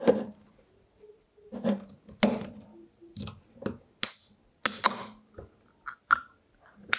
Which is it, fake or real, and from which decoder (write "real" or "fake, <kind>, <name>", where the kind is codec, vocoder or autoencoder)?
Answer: real